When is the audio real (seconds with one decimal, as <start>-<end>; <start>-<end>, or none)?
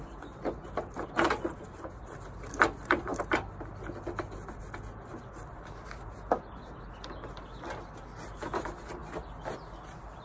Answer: 0.0-10.2